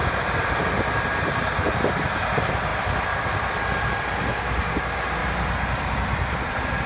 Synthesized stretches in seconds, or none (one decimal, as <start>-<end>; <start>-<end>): 0.0-0.5; 2.7-4.0; 5.2-6.9